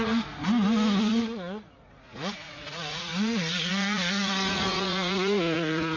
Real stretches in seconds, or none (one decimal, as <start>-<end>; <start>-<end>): 0.4-1.0